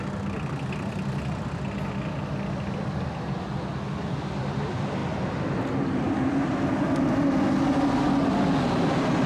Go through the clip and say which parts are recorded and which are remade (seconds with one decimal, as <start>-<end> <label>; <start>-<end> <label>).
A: 0.0-9.3 recorded